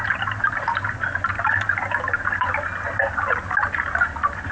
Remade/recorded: recorded